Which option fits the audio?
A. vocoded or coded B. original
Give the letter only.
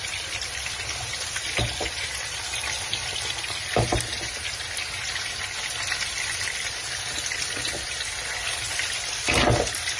B